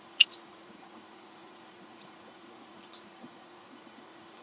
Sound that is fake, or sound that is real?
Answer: fake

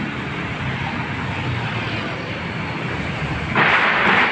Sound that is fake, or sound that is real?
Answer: real